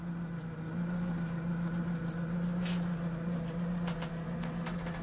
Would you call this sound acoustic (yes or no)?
yes